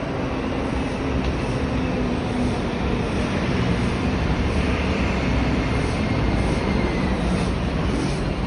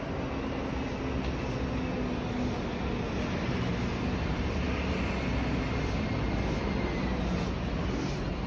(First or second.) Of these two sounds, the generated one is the first